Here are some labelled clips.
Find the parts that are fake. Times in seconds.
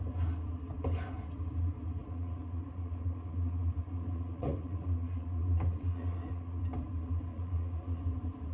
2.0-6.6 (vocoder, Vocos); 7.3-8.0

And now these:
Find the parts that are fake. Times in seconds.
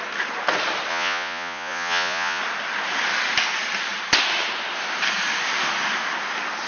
0.9-2.4 (vocoder, Vocos)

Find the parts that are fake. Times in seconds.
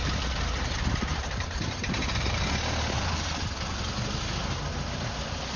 1.1-2.4 (vocoder, BigVGAN v2)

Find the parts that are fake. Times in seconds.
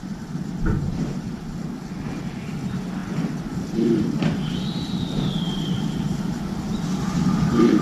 none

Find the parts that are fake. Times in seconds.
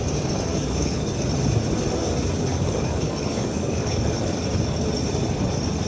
0.5-1.1 (codec, DAC); 2.5-4.2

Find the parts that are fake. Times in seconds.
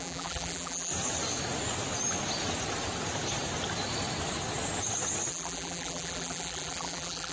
0.0-0.9 (vocoder, BigVGAN v2); 5.3-7.3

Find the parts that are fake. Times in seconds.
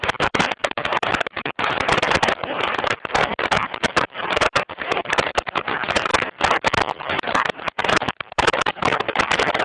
0.0-6.1 (vocoder, BigVGAN v2); 7.0-9.6